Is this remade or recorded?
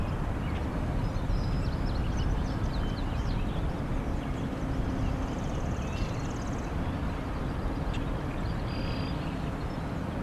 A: recorded